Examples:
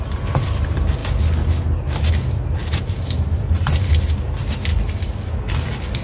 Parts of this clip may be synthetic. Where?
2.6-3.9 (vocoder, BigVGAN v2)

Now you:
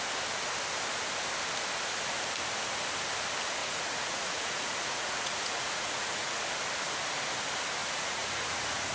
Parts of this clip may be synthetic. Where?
3.6-6.4 (vocoder, Vocos); 7.8-8.9

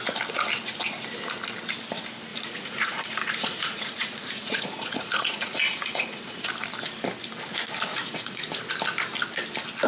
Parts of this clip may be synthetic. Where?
2.3-6.5 (vocoder, Vocos); 7.9-8.6

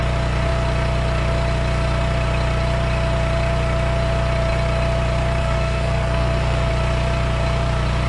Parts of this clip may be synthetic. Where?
5.4-6.7 (codec, SNAC)